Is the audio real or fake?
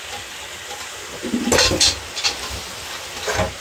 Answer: real